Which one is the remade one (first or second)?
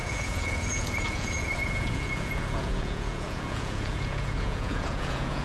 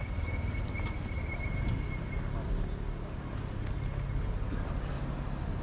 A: first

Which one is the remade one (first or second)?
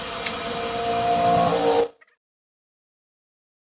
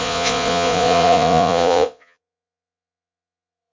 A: second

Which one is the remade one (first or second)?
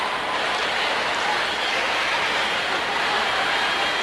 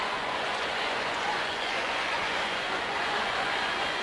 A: second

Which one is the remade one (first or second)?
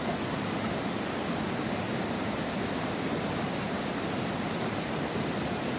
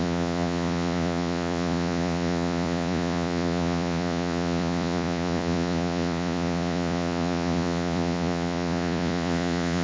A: second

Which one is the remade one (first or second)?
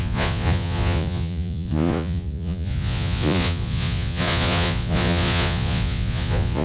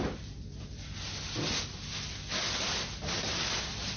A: first